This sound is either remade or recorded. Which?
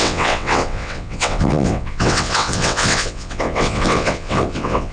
remade